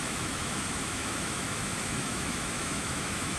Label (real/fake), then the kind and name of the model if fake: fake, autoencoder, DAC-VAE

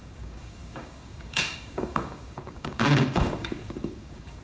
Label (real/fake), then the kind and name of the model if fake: fake, codec, DAC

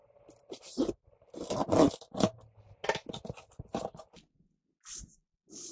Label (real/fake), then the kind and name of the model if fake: real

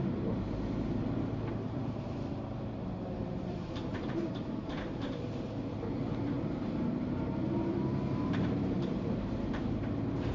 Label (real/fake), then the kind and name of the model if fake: fake, vocoder, BigVGAN v2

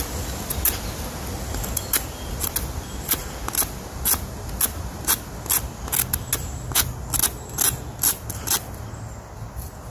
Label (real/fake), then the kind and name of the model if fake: real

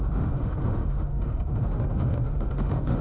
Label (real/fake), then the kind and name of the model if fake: fake, autoencoder, DAC-VAE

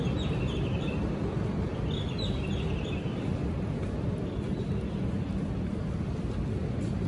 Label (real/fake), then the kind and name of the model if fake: real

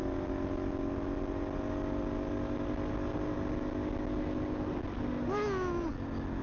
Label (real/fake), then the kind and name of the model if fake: real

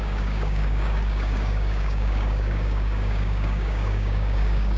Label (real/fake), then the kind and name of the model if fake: fake, codec, DAC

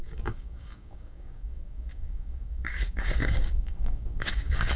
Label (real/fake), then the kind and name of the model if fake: fake, codec, DAC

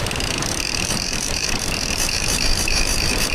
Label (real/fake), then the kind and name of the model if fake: fake, vocoder, BigVGAN v2